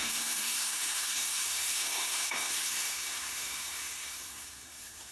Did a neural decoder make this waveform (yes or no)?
yes